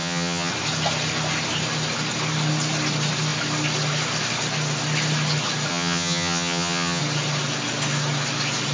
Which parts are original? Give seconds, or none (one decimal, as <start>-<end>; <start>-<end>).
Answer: 0.5-5.7; 7.0-8.7